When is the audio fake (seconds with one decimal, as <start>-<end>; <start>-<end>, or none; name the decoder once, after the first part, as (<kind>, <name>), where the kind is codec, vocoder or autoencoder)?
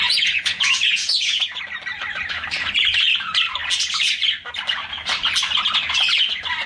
0.0-1.6 (vocoder, Vocos)